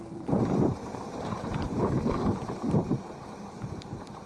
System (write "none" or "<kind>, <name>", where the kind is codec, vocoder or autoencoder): vocoder, BigVGAN v2